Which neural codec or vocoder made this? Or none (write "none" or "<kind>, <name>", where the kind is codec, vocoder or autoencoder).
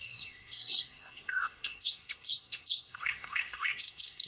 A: codec, SNAC